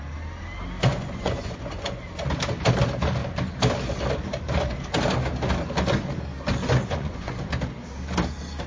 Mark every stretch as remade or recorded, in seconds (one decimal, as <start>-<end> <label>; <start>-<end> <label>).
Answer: 0.0-0.9 recorded; 0.9-2.0 remade; 2.0-6.8 recorded; 6.8-7.5 remade; 7.5-8.7 recorded